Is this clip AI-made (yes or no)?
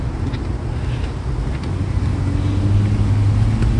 no